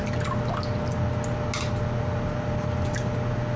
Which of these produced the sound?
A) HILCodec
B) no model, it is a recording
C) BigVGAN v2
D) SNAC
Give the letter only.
B